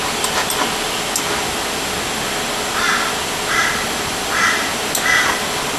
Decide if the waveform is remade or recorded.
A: recorded